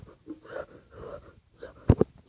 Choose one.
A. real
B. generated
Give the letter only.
B